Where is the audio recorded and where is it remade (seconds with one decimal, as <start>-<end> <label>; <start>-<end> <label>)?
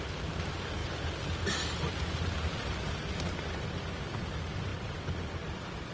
0.0-5.9 recorded